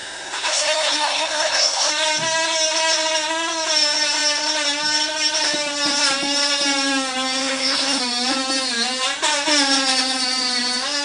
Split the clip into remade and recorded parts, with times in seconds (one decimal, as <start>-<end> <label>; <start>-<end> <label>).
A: 0.0-1.9 remade; 1.9-7.4 recorded; 7.4-8.0 remade; 8.0-11.0 recorded